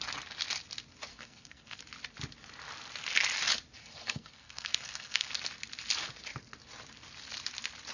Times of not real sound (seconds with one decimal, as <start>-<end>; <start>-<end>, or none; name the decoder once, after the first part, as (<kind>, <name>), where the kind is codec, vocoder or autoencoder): 1.1-1.8 (codec, SNAC); 3.8-5.3